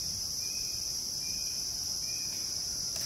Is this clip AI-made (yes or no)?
yes